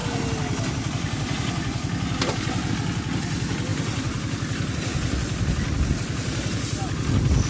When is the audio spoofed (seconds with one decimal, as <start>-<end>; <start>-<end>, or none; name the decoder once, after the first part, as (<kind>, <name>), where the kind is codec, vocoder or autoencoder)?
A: none